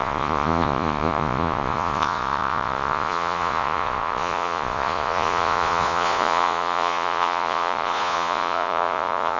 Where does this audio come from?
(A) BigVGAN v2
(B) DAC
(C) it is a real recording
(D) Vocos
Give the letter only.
D